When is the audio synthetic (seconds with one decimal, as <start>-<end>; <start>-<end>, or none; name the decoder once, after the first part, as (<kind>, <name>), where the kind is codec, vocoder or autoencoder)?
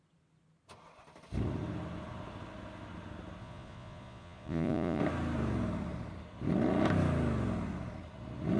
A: 3.4-5.0 (vocoder, Vocos)